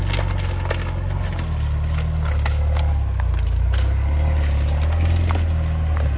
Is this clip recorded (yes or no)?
yes